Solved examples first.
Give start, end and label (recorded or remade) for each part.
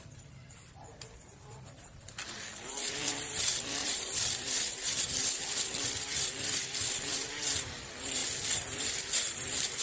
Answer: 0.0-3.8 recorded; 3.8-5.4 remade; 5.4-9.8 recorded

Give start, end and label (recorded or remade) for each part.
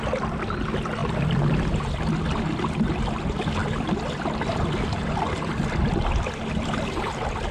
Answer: 0.0-7.5 recorded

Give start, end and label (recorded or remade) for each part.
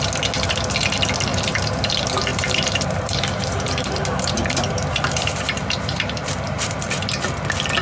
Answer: 0.0-1.3 recorded; 1.3-1.8 remade; 1.8-2.3 recorded; 2.3-7.0 remade; 7.0-7.8 recorded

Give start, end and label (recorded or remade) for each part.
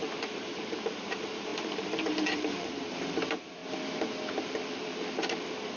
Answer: 0.0-3.6 remade; 3.6-4.7 recorded; 4.7-5.8 remade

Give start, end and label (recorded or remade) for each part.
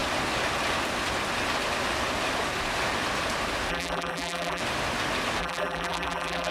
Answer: 0.0-3.7 recorded; 3.7-4.6 remade; 4.6-5.4 recorded; 5.4-6.5 remade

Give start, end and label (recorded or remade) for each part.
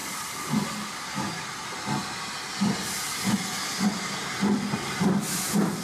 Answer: 0.0-5.8 recorded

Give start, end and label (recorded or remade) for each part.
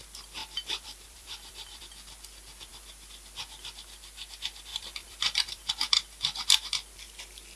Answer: 0.0-0.4 recorded; 0.4-1.8 remade; 1.8-4.7 recorded; 4.7-5.7 remade; 5.7-7.6 recorded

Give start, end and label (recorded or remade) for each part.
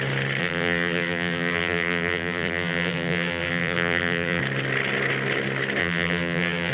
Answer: 0.0-0.4 recorded; 0.4-4.4 remade; 4.4-5.8 recorded; 5.8-6.7 remade